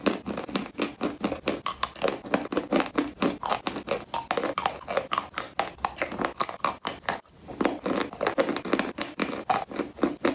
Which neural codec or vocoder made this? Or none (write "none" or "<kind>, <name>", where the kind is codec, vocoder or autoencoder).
none